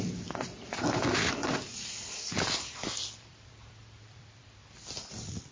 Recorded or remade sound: remade